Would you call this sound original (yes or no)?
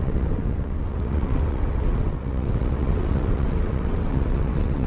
no